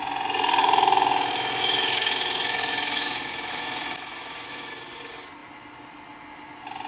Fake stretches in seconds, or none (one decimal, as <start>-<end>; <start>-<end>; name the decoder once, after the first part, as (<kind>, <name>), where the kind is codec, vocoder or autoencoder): 0.6-4.7 (autoencoder, DAC-VAE)